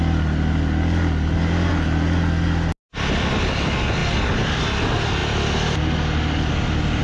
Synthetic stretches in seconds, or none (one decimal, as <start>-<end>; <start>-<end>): none